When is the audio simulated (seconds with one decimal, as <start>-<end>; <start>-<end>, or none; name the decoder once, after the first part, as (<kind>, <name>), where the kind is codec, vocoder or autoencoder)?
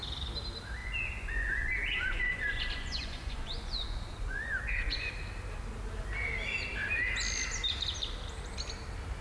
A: 0.8-5.1 (vocoder, Vocos)